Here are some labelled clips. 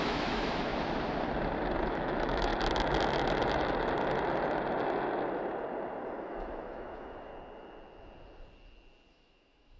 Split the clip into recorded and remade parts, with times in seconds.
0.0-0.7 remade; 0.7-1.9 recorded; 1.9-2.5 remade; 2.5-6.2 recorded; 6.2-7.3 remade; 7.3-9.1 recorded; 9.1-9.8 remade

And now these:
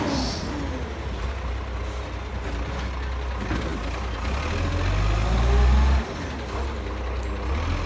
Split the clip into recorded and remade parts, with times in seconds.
0.0-7.9 recorded